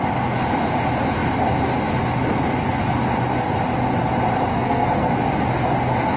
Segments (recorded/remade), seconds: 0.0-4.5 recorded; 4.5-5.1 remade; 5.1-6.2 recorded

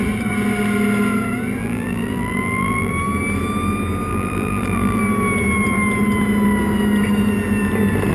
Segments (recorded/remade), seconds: 0.0-1.6 recorded; 1.6-2.9 remade; 2.9-4.1 recorded; 4.1-5.0 remade; 5.0-8.1 recorded

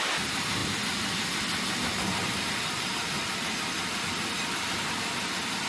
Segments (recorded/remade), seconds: 0.0-5.7 recorded

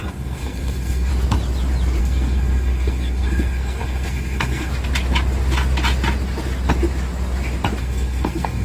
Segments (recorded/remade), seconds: 0.0-1.1 remade; 1.1-2.0 recorded; 2.0-4.7 remade; 4.7-7.8 recorded; 7.8-8.6 remade

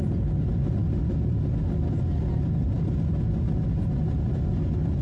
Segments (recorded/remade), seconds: 0.0-5.0 recorded

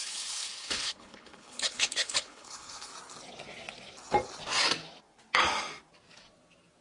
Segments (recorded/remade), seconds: 0.0-2.9 remade; 2.9-6.8 recorded

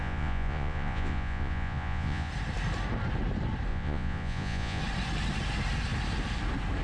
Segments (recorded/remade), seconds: 0.0-2.3 remade; 2.3-3.7 recorded; 3.7-4.8 remade; 4.8-6.8 recorded